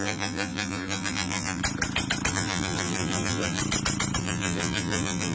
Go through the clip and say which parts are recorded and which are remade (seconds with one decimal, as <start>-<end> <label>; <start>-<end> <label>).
0.0-1.6 remade; 1.6-2.3 recorded; 2.3-3.6 remade; 3.6-4.2 recorded; 4.2-5.3 remade